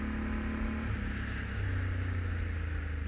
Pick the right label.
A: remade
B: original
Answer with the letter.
B